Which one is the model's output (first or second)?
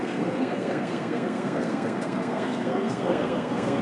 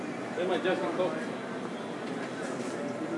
first